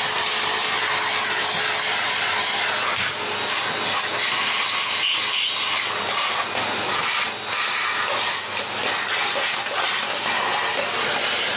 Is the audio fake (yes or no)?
no